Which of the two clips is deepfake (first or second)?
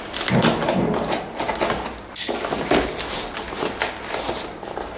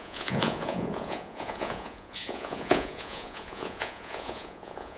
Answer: second